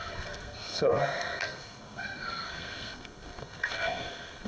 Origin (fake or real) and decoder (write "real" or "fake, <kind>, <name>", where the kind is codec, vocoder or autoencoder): fake, codec, SNAC